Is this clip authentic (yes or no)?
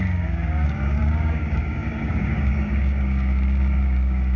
no